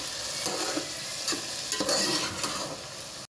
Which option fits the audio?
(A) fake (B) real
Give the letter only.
B